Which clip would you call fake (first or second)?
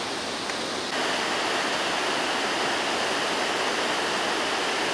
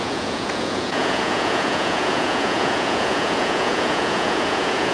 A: second